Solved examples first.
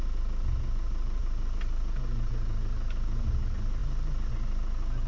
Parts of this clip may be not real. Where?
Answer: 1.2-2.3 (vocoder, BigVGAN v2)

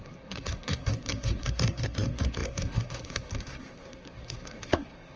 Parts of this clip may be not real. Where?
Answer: 0.0-5.2 (codec, SNAC)

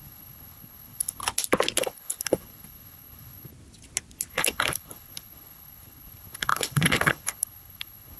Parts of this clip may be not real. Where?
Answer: 0.0-1.2 (codec, HILCodec); 1.8-3.5; 4.3-8.2

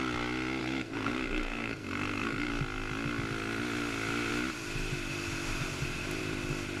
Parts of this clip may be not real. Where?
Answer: 0.6-2.5 (codec, SNAC)